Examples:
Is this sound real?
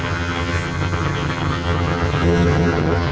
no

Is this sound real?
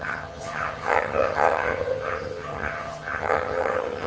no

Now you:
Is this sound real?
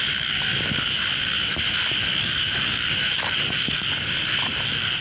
yes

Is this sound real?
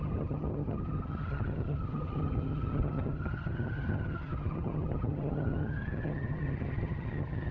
no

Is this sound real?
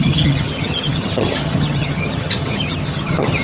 no